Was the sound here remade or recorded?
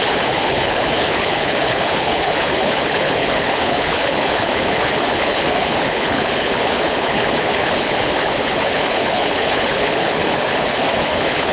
remade